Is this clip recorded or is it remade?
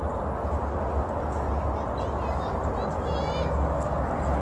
recorded